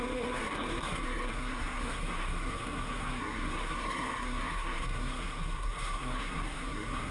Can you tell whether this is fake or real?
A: fake